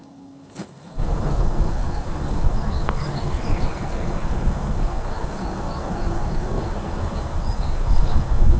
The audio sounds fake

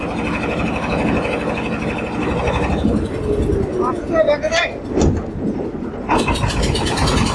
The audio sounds real